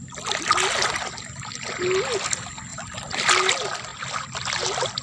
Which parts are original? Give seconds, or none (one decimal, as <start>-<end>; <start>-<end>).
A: 0.0-2.7; 3.5-5.0